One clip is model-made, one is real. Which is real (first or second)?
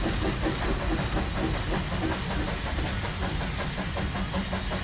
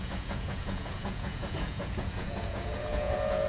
first